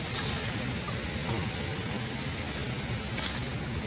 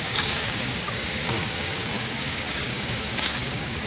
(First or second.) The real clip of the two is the first